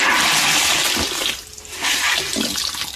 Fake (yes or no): no